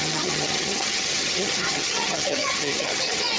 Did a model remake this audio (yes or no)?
yes